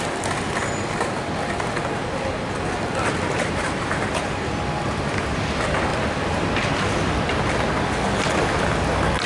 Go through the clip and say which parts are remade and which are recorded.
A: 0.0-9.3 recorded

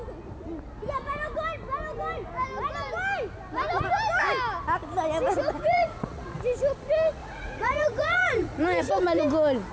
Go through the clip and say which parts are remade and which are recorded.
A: 0.0-5.7 recorded; 5.7-6.3 remade; 6.3-7.2 recorded; 7.2-9.2 remade; 9.2-9.7 recorded

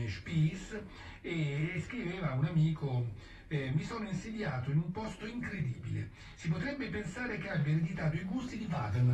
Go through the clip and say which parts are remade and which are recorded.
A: 0.0-9.1 recorded

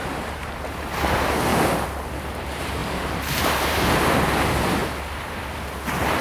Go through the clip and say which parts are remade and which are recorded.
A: 0.0-0.6 remade; 0.6-1.5 recorded; 1.5-2.1 remade; 2.1-2.8 recorded; 2.8-3.8 remade; 3.8-4.8 recorded; 4.8-5.4 remade; 5.4-6.2 recorded

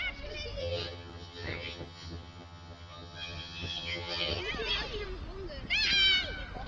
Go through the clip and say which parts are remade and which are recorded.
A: 0.0-0.6 recorded; 0.6-4.4 remade; 4.4-6.7 recorded

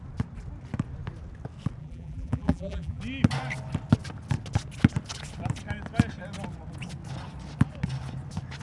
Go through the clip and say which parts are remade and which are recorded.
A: 0.0-1.8 recorded; 1.8-3.0 remade; 3.0-8.6 recorded

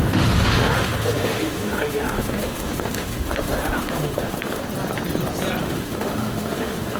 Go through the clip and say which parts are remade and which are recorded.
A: 0.0-4.6 remade; 4.6-5.6 recorded; 5.6-7.0 remade

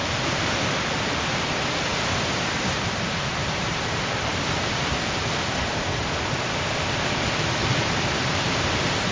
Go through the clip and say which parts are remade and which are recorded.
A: 0.0-9.1 recorded